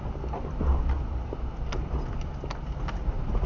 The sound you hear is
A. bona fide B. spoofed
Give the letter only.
A